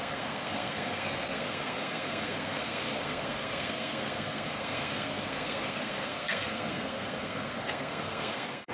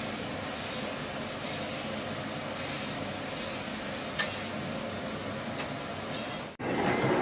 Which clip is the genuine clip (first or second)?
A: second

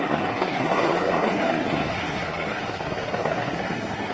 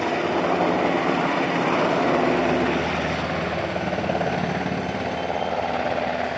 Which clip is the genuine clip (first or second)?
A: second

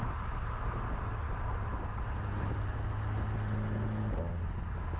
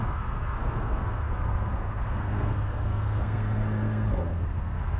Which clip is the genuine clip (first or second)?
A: first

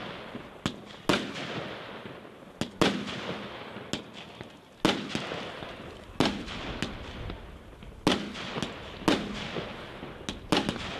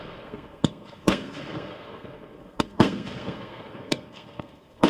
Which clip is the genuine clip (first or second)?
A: first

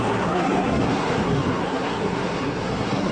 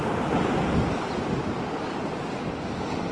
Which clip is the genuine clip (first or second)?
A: second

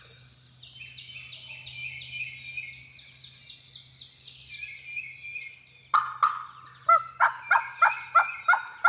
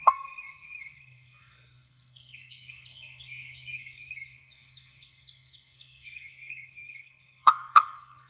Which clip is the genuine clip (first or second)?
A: first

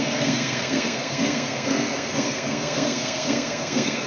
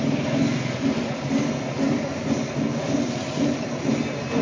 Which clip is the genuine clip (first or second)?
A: second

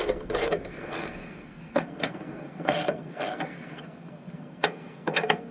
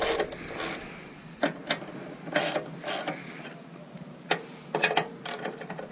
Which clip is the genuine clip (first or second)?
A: second